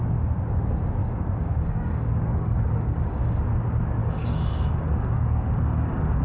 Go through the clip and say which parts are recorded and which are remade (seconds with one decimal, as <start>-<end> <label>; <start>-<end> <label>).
0.0-1.0 recorded; 1.0-3.4 remade; 3.4-4.0 recorded; 4.0-6.2 remade